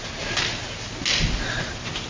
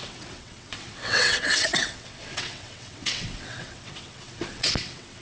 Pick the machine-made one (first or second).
second